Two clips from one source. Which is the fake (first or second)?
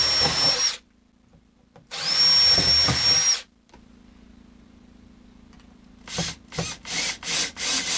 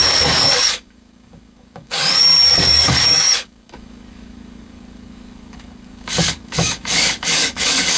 second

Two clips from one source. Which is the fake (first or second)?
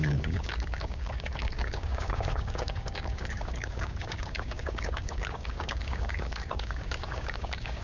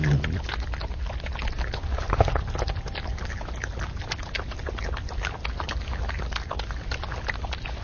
first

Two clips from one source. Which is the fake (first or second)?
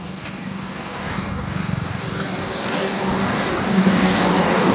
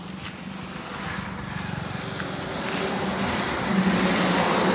first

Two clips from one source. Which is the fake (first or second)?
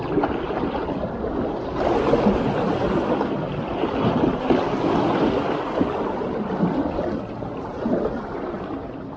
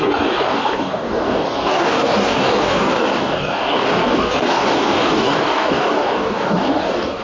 second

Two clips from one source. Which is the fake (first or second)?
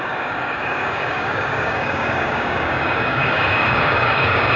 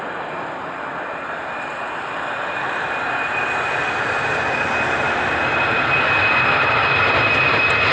first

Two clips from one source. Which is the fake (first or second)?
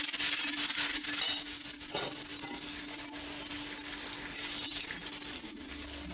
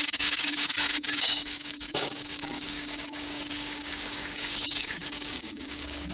second